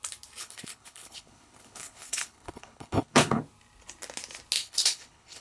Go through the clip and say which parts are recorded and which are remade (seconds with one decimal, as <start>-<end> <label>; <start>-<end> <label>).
0.0-0.4 recorded; 0.4-3.4 remade; 3.4-4.6 recorded; 4.6-5.4 remade